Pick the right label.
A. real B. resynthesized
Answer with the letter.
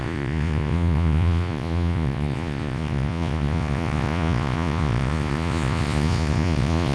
B